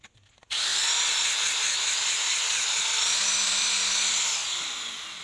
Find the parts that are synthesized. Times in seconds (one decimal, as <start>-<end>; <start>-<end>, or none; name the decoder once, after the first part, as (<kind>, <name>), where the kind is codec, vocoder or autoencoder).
none